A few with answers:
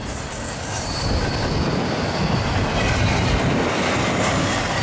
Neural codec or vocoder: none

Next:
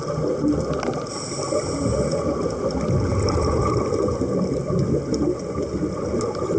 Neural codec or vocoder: none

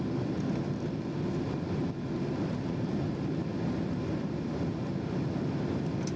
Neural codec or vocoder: none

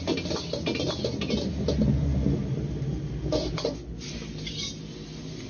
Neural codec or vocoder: none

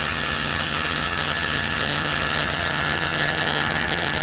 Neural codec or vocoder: vocoder, HiFi-GAN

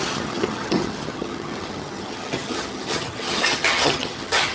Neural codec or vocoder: vocoder, HiFi-GAN